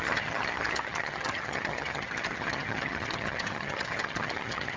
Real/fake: fake